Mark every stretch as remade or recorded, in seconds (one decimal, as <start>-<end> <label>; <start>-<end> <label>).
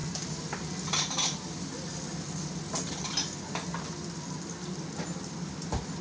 0.0-6.0 recorded